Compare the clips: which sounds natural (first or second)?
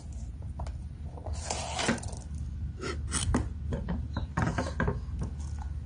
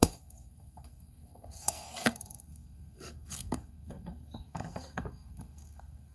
first